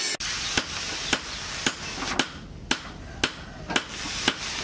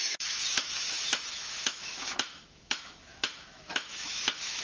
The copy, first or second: second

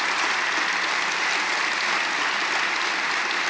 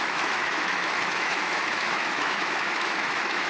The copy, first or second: second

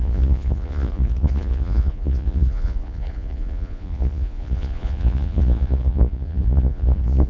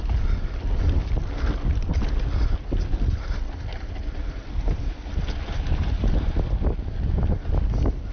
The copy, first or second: first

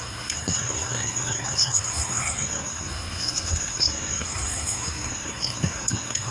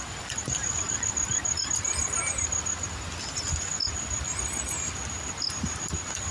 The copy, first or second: first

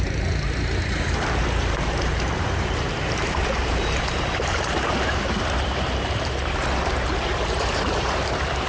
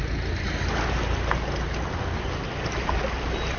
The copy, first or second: first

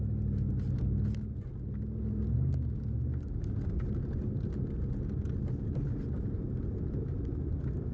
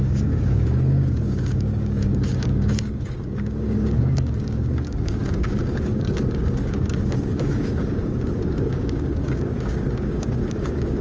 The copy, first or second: second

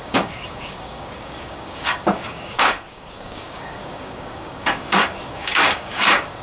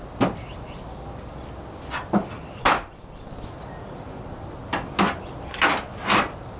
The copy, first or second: first